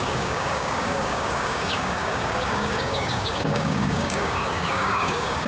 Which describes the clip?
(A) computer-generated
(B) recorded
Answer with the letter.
A